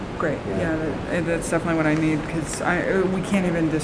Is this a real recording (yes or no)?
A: yes